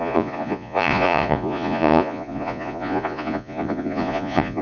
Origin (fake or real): fake